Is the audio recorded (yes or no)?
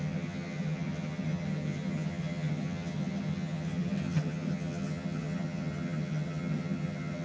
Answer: no